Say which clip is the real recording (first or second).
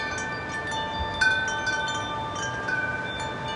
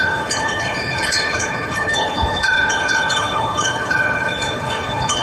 first